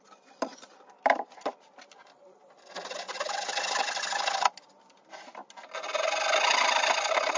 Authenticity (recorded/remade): recorded